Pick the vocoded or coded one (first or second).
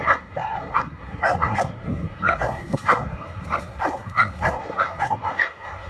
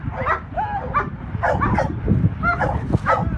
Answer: first